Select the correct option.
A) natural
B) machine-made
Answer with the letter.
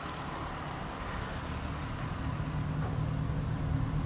A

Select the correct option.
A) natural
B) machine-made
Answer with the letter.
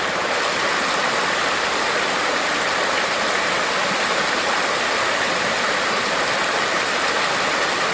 A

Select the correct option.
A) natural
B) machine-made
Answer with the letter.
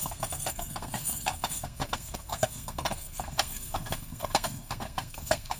B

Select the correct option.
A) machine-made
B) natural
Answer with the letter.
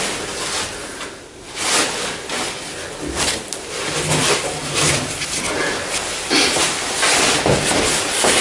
B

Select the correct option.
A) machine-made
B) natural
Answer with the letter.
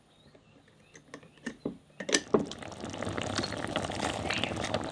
B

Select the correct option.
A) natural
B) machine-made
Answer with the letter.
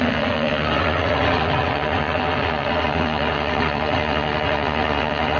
B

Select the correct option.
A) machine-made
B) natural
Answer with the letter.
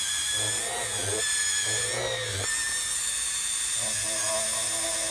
B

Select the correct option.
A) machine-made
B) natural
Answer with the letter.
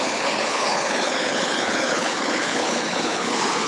A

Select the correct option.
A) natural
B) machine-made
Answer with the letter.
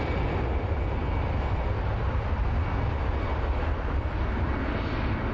A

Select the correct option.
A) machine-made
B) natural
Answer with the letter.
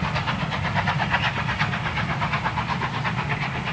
B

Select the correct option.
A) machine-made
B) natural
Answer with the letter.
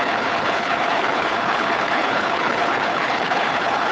A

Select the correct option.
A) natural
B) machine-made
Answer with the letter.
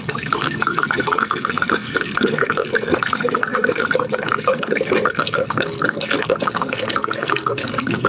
B